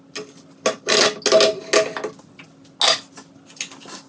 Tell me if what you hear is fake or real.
real